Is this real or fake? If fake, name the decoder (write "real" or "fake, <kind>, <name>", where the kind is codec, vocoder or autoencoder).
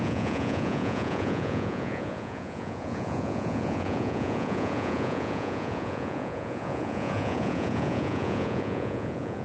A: fake, vocoder, Vocos